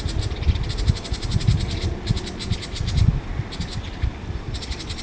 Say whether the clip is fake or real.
real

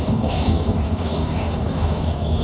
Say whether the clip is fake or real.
fake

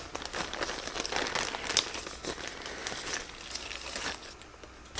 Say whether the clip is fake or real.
real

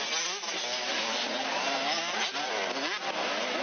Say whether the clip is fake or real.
real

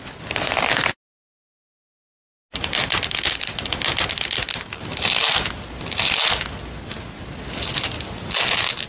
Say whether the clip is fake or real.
real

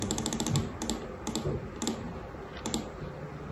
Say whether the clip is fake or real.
real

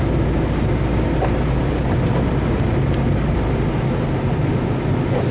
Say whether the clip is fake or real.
real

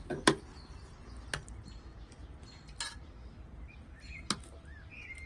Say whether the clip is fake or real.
real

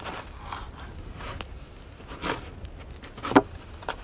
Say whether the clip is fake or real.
real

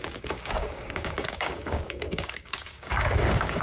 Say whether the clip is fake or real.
fake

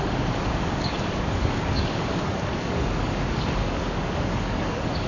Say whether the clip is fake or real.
fake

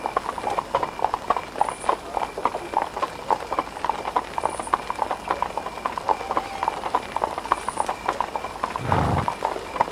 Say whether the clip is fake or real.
real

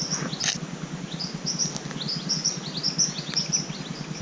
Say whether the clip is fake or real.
real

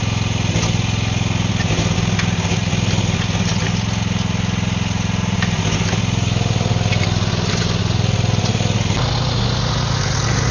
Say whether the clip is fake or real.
real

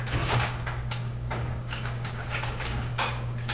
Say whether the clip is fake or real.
fake